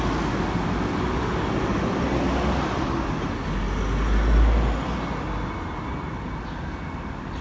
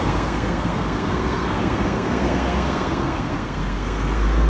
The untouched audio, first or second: first